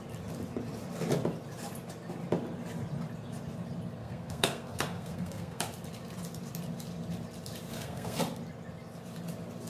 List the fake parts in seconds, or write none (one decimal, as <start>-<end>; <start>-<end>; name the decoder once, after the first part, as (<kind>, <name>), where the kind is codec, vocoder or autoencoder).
4.0-5.6 (codec, SNAC); 7.7-8.2